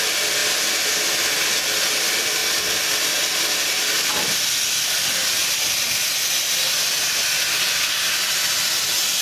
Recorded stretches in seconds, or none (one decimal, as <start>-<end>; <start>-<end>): 0.0-9.2